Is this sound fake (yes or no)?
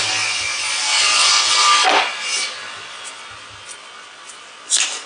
no